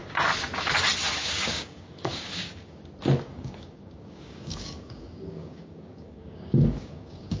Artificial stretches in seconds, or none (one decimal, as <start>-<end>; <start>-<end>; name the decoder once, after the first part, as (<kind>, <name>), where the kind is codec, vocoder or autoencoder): 1.2-2.8 (codec, DAC); 3.3-7.4